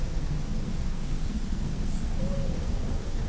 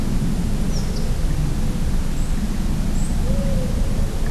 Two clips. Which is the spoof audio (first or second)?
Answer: first